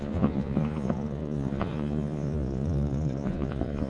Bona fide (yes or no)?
no